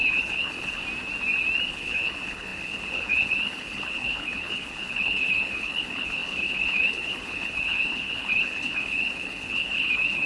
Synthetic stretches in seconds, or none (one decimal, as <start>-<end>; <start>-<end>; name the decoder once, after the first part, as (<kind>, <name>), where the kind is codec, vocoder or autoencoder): 0.0-0.8 (codec, HILCodec); 1.7-10.3